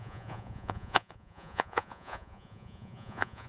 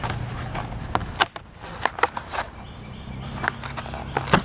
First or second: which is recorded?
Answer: second